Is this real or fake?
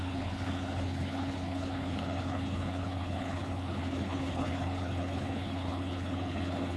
fake